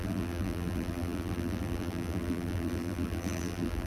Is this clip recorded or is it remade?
remade